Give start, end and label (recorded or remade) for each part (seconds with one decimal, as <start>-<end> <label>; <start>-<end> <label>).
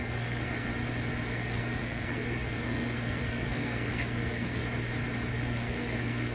0.0-0.7 remade; 0.7-1.3 recorded; 1.3-4.6 remade; 4.6-5.3 recorded; 5.3-6.3 remade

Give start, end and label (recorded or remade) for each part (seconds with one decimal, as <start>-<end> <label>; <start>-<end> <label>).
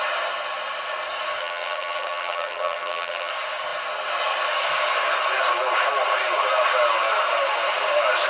0.0-1.4 recorded; 1.4-3.3 remade; 3.3-8.3 recorded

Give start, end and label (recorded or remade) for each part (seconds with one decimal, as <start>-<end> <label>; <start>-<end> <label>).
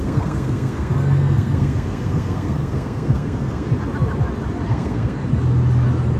0.0-3.7 remade; 3.7-4.7 recorded; 4.7-5.2 remade; 5.2-6.2 recorded